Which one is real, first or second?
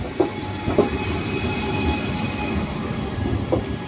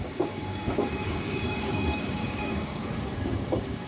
first